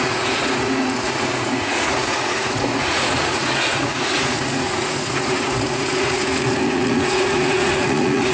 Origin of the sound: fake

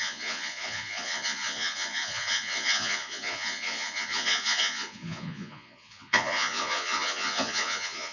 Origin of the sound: fake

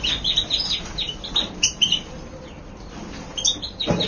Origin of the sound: real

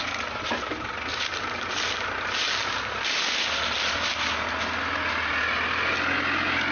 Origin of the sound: real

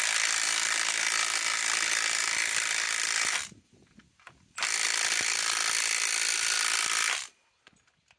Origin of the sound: real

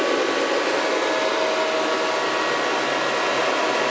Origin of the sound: real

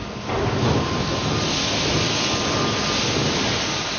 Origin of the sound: real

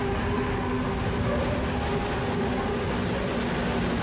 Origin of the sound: real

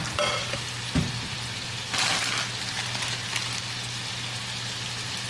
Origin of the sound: real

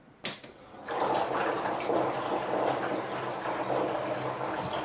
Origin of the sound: real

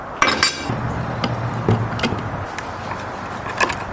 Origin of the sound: real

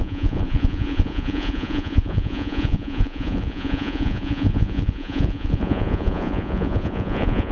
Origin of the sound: fake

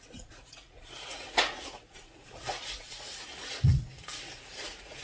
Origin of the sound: fake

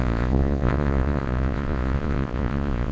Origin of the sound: fake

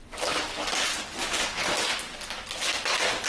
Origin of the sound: real